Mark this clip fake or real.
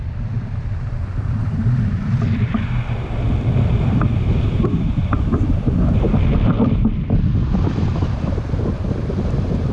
fake